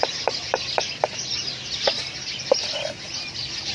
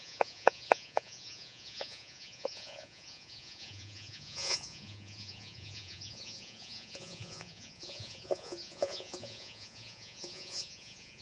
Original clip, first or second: first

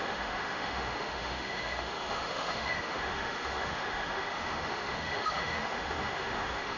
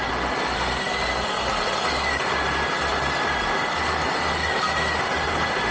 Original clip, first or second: second